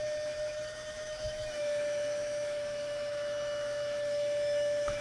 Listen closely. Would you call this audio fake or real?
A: fake